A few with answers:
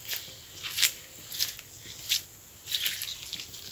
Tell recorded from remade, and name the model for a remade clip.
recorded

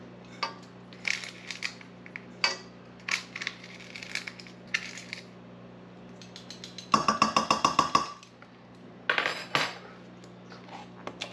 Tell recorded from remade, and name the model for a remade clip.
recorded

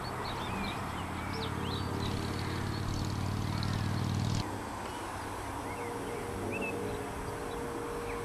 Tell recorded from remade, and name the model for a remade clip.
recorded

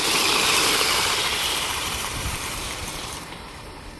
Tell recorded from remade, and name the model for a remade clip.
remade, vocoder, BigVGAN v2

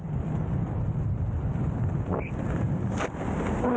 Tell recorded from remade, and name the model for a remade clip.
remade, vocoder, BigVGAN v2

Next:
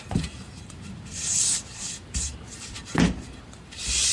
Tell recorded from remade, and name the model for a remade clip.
remade, vocoder, BigVGAN v2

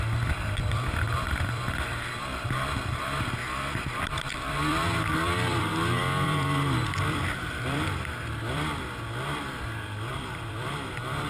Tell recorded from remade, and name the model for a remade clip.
remade, vocoder, BigVGAN v2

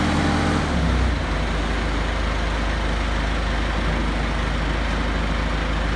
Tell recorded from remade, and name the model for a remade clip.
recorded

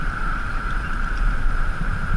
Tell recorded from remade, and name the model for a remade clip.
remade, vocoder, BigVGAN v2